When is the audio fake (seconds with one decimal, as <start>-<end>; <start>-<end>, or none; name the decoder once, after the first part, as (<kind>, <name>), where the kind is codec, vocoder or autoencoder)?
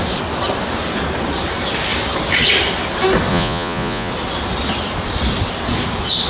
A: 3.3-4.1 (vocoder, Vocos)